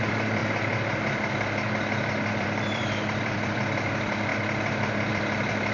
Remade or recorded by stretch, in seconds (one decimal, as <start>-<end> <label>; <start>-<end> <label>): 0.0-0.4 remade; 0.4-2.4 recorded; 2.4-4.3 remade; 4.3-5.1 recorded; 5.1-5.7 remade